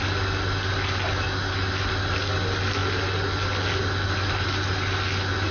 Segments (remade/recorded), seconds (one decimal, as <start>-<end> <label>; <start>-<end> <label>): 0.0-5.5 recorded